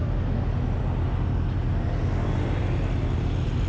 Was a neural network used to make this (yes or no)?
no